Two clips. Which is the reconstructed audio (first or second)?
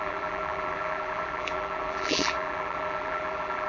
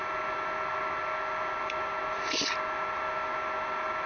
first